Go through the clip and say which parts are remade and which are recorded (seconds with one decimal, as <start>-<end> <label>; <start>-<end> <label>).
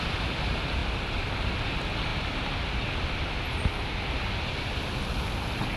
0.0-5.8 recorded